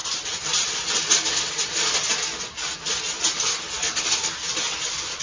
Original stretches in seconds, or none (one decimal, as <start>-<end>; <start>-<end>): 0.0-5.2